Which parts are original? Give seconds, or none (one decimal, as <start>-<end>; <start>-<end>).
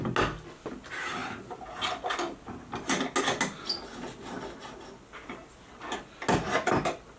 0.0-7.2